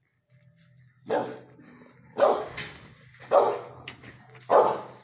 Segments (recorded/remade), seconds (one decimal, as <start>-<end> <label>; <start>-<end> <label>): 0.0-5.0 recorded